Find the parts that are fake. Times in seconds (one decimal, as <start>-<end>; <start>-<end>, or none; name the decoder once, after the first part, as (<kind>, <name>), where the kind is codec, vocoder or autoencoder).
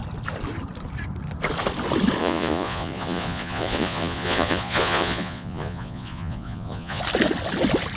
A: 2.2-7.0 (vocoder, Vocos)